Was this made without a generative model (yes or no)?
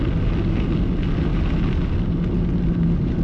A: yes